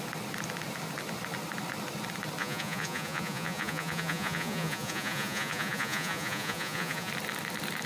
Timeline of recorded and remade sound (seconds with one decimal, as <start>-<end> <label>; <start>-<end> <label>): 0.0-2.4 recorded; 2.4-7.1 remade; 7.1-7.9 recorded